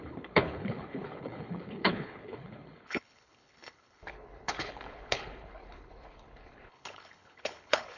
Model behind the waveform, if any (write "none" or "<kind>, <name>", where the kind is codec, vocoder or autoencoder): codec, HILCodec